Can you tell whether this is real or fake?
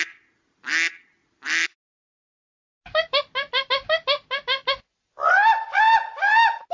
real